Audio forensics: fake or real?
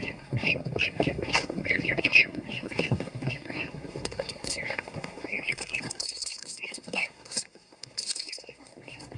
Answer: fake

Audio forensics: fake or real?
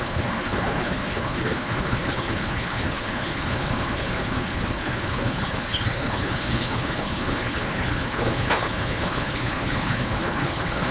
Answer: fake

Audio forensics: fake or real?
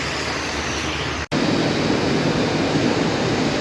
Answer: real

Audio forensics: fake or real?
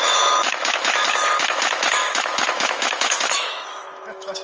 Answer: fake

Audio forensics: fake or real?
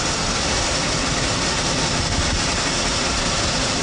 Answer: fake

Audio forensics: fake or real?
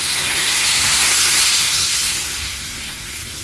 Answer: fake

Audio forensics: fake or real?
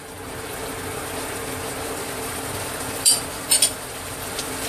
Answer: fake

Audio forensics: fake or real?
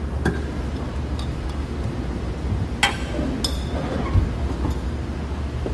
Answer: real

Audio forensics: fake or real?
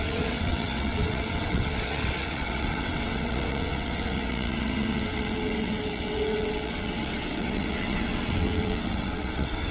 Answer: fake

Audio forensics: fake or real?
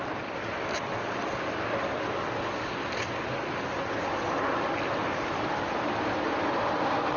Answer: real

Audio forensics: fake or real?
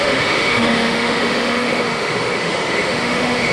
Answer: fake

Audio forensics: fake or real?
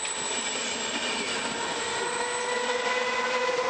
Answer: real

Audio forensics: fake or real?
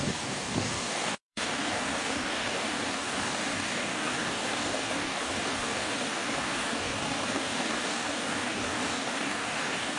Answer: fake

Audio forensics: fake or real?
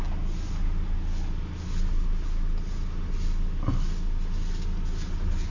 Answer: real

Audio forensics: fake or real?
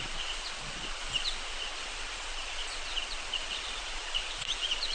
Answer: fake